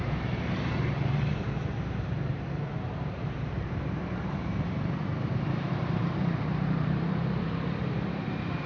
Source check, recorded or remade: remade